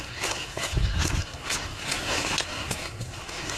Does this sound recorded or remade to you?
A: remade